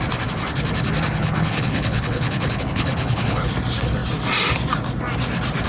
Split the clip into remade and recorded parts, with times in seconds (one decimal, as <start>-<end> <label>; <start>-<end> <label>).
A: 0.0-1.2 recorded; 1.2-3.5 remade; 3.5-5.7 recorded